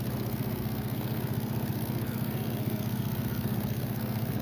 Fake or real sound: fake